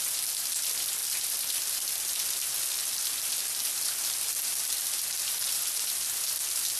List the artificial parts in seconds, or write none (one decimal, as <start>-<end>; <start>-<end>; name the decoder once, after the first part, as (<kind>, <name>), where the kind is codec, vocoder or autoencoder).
none